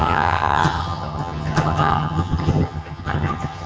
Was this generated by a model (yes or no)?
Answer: yes